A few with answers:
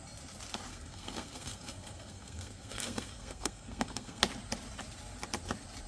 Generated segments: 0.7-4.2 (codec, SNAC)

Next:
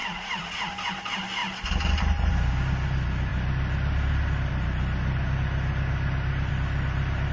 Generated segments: 0.0-0.7 (vocoder, Vocos)

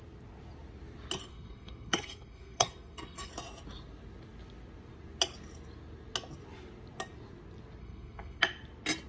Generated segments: 1.3-3.3 (codec, SNAC); 7.8-8.4

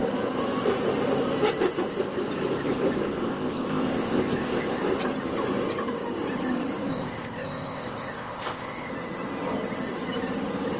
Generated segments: 3.2-4.8 (codec, ZipCodec); 6.9-8.9

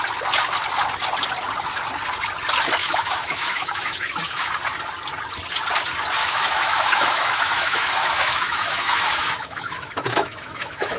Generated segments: 2.8-4.5 (autoencoder, DAC-VAE); 6.2-11.0

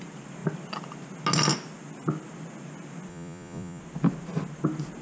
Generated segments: 3.1-3.8 (vocoder, Vocos)